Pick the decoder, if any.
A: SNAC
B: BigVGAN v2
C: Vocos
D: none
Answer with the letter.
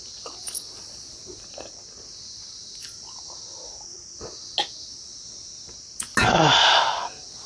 D